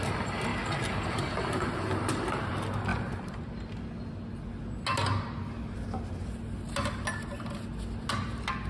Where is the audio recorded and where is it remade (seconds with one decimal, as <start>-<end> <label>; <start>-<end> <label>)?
0.0-0.5 recorded; 0.5-2.5 remade; 2.5-2.9 recorded; 2.9-3.6 remade; 3.6-8.7 recorded